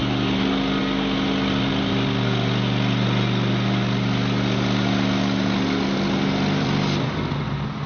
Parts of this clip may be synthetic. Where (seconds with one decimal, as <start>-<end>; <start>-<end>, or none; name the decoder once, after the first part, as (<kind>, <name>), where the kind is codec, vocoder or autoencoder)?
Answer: none